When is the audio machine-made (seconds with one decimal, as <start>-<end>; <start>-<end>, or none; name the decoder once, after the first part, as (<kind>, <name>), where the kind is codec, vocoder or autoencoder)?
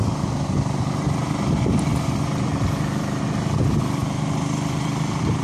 1.9-3.2 (vocoder, BigVGAN v2); 4.0-5.4